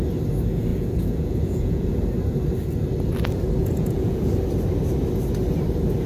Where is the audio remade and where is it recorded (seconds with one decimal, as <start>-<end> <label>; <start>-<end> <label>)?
0.0-0.7 recorded; 0.7-2.0 remade; 2.0-3.6 recorded; 3.6-4.3 remade; 4.3-6.1 recorded